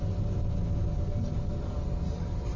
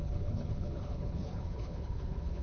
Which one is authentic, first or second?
first